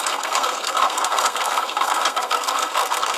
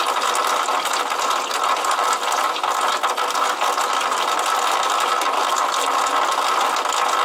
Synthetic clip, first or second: first